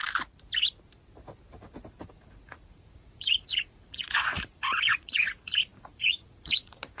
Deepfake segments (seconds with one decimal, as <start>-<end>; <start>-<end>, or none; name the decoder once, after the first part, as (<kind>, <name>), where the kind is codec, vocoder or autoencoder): 2.1-7.0 (vocoder, Vocos)